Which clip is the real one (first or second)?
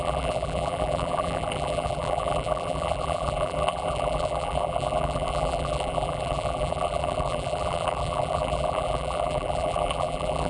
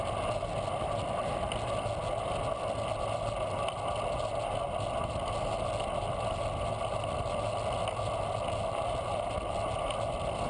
second